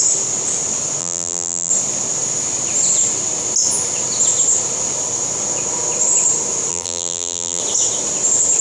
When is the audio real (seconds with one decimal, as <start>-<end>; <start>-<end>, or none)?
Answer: 0.0-1.0; 1.7-6.7; 7.6-8.6